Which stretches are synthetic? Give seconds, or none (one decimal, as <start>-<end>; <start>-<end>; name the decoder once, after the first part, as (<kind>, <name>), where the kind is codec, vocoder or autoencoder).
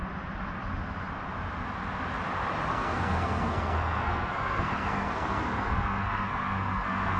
2.7-7.2 (codec, SNAC)